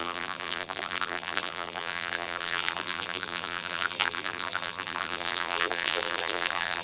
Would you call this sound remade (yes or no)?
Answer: yes